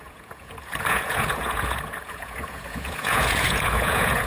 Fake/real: fake